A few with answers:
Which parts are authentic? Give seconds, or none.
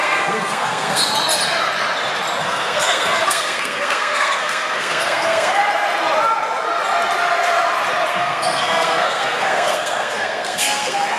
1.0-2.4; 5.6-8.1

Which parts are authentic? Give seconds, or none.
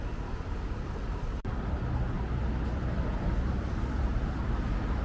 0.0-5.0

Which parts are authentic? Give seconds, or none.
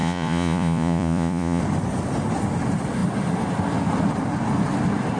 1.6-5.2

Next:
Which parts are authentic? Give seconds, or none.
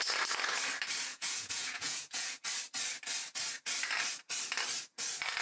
0.0-1.1; 2.4-5.4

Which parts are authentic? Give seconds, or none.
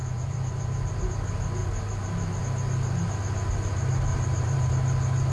1.1-1.6; 2.4-4.1; 4.7-5.3